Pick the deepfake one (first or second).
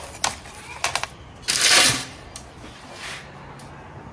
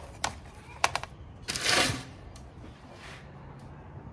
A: second